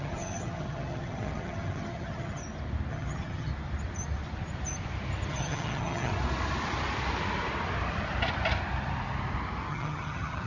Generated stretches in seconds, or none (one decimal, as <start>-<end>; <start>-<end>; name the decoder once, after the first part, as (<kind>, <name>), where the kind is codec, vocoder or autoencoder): 0.0-2.4 (vocoder, HiFi-GAN); 2.9-3.5; 5.3-6.1; 9.7-10.5